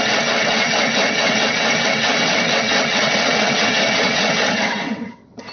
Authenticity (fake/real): fake